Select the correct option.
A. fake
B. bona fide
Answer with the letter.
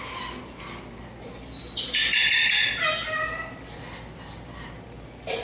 B